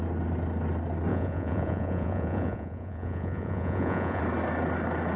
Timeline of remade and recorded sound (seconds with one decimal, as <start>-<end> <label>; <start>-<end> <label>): 0.0-1.1 recorded; 1.1-4.2 remade; 4.2-5.2 recorded